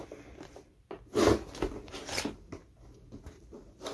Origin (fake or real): real